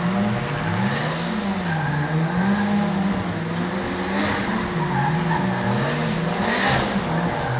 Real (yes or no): yes